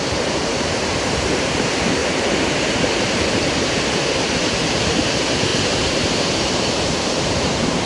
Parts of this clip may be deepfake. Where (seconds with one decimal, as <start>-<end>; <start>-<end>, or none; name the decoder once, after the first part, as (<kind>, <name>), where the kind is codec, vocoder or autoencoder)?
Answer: 0.0-2.0 (vocoder, BigVGAN v2); 3.0-7.9